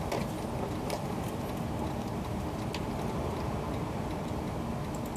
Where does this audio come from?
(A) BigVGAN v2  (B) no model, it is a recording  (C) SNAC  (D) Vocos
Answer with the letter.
B